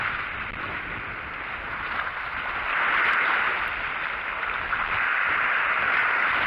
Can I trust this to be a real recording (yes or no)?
yes